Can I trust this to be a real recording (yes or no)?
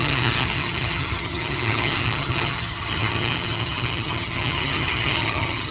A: no